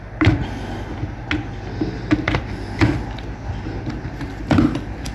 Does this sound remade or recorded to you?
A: recorded